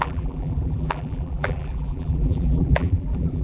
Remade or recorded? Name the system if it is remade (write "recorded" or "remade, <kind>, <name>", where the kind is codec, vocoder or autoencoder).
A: remade, vocoder, BigVGAN v2